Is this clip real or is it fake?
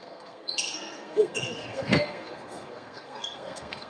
fake